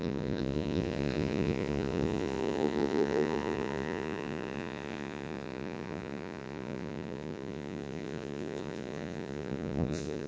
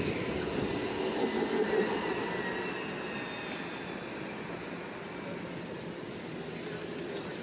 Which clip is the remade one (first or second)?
first